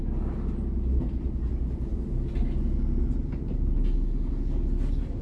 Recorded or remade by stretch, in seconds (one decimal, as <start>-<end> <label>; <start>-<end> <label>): 0.0-5.2 recorded